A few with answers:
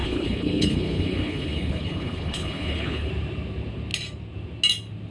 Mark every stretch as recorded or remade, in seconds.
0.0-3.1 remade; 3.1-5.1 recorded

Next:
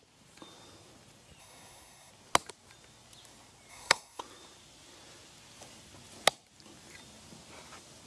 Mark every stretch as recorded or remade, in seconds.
0.0-1.4 recorded; 1.4-2.1 remade; 2.1-3.7 recorded; 3.7-4.2 remade; 4.2-8.1 recorded